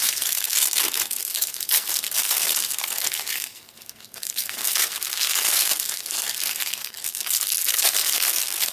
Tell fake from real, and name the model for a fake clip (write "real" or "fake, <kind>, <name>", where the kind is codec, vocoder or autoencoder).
fake, codec, SNAC